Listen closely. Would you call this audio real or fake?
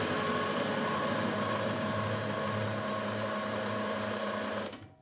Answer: real